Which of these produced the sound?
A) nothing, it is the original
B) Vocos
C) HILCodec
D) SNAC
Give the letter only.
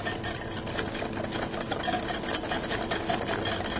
A